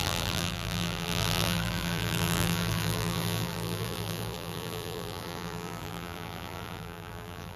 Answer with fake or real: fake